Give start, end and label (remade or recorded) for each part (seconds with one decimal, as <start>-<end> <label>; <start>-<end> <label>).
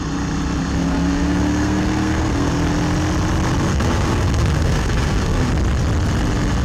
0.0-0.8 recorded; 0.8-2.5 remade; 2.5-3.7 recorded; 3.7-5.5 remade; 5.5-6.6 recorded